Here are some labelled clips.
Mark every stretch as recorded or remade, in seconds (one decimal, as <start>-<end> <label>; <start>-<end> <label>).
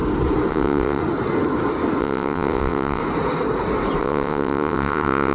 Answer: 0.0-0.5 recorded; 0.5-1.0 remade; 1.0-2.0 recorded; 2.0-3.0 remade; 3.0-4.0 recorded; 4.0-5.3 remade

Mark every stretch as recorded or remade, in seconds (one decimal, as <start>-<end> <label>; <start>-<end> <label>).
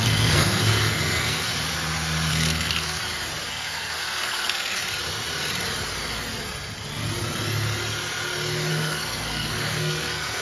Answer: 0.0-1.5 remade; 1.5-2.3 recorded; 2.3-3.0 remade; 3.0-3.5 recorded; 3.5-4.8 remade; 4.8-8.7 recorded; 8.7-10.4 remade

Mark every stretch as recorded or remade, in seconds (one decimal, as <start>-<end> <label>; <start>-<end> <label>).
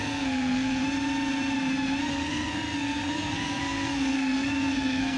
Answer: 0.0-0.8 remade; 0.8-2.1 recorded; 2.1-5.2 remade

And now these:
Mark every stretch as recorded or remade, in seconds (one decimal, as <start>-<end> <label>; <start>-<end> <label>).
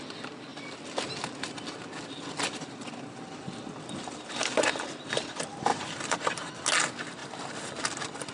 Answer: 0.0-5.7 recorded; 5.7-6.5 remade; 6.5-7.2 recorded; 7.2-7.8 remade; 7.8-8.3 recorded